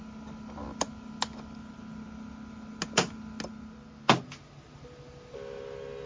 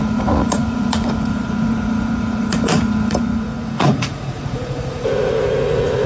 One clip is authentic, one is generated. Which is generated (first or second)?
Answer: second